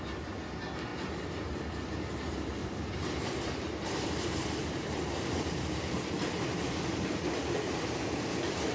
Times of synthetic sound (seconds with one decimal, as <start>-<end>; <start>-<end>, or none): 2.6-7.7